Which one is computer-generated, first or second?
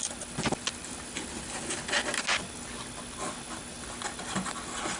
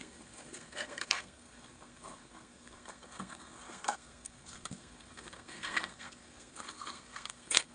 second